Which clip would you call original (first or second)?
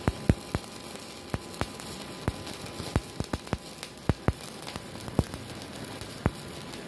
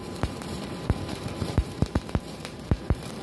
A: first